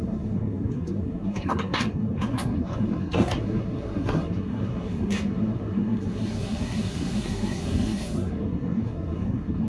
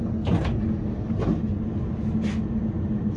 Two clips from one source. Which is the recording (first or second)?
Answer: second